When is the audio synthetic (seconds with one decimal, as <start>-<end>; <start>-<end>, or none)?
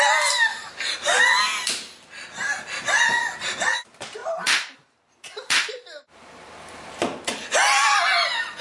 0.5-1.2; 4.2-7.0